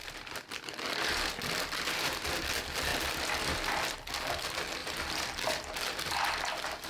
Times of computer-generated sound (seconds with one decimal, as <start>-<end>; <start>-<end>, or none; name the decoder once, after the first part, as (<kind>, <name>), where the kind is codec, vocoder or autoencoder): 0.0-1.3 (vocoder, BigVGAN v2); 2.9-3.8; 4.8-6.9